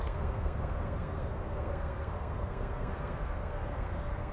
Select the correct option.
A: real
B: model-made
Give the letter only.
B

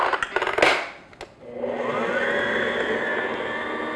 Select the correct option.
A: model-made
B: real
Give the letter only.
B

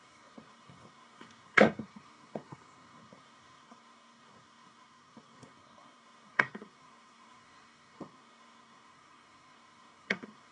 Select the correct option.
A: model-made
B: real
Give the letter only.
A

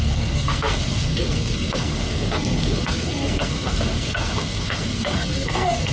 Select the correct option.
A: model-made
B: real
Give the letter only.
A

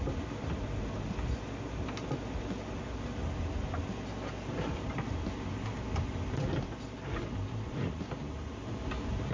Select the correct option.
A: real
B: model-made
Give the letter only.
A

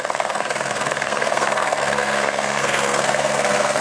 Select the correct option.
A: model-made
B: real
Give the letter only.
A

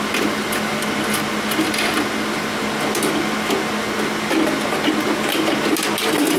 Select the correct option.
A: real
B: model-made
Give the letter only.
A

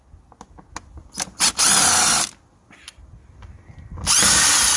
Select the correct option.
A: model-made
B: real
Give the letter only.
B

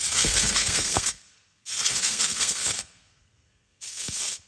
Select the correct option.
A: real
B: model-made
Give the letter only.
B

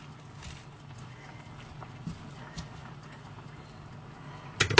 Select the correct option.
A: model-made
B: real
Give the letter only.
B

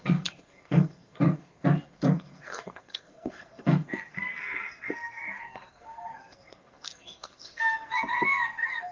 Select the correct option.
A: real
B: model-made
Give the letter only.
B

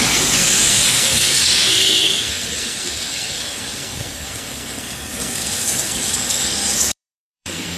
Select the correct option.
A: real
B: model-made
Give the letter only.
B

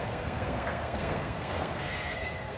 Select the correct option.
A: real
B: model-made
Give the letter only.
B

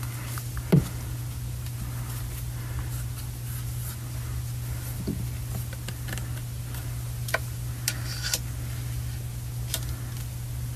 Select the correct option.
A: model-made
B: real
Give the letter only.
B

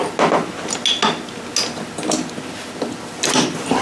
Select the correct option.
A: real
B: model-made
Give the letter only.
A